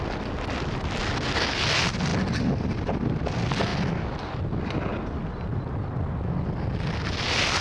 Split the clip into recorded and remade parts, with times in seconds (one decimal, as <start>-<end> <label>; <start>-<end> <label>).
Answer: 0.0-7.6 recorded